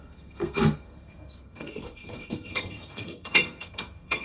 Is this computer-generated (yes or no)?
yes